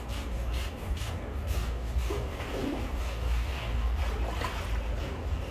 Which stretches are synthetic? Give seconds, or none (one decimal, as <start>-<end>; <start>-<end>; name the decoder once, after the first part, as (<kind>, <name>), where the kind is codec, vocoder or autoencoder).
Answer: 0.0-4.0 (codec, DAC); 5.0-5.5